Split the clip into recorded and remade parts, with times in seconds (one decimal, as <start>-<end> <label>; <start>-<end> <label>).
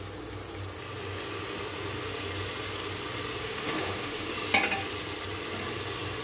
0.0-3.4 recorded; 3.4-4.3 remade; 4.3-6.2 recorded